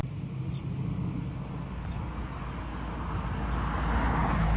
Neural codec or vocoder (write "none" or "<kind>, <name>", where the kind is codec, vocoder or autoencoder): none